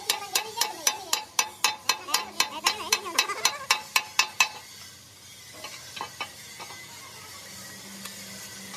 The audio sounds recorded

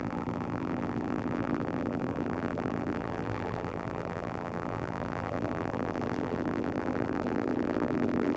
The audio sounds remade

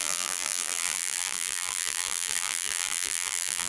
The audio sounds remade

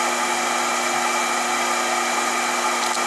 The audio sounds recorded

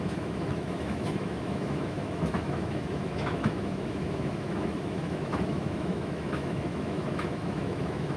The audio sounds remade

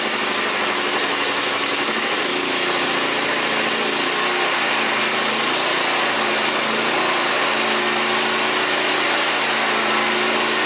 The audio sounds recorded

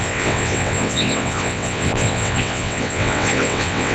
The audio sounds remade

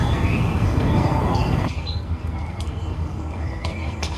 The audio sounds remade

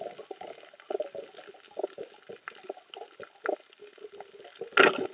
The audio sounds recorded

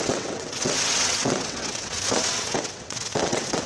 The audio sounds remade